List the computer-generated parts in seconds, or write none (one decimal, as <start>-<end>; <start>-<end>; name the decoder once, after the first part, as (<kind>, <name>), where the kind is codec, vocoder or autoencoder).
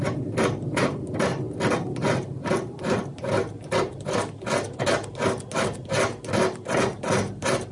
none